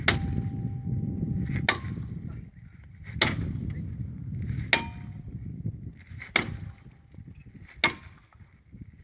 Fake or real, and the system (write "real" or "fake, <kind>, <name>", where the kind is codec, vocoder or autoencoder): real